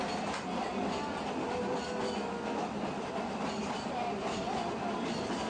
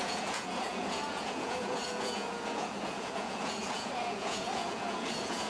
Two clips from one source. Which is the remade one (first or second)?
second